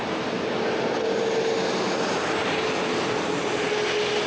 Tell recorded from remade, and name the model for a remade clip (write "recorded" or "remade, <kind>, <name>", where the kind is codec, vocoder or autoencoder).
recorded